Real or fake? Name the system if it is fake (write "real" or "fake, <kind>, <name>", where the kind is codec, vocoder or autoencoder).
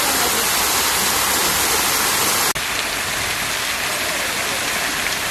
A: real